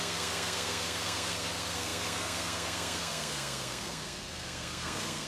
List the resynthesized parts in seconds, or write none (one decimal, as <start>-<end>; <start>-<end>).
0.0-5.3